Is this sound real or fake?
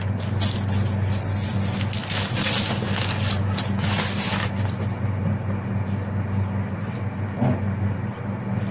real